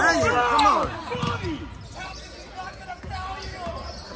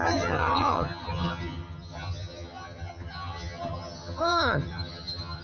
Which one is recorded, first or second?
first